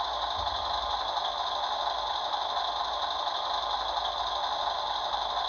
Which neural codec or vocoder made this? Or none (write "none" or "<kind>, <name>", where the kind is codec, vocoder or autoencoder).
none